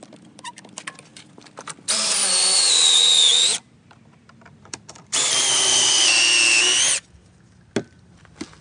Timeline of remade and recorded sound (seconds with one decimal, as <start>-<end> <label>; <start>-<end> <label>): 0.0-1.1 recorded; 1.1-6.1 remade; 6.1-8.6 recorded